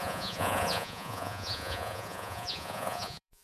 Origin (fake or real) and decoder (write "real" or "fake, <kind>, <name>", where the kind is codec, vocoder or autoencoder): fake, vocoder, Vocos